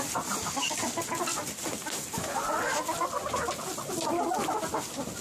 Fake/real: real